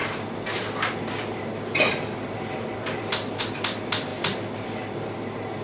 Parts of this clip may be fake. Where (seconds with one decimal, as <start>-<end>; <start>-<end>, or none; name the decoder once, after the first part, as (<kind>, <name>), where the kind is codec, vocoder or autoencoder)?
none